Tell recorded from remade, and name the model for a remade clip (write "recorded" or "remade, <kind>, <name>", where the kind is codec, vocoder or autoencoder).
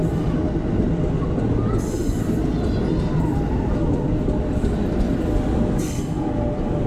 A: recorded